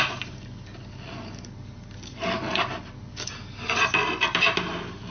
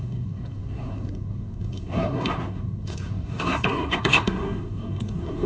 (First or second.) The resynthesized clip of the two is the second